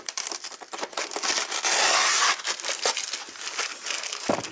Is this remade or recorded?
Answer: recorded